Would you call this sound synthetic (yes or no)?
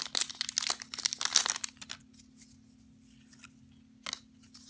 no